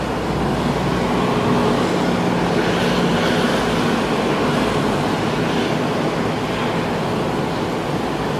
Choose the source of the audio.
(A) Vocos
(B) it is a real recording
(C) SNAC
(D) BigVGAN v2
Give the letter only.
B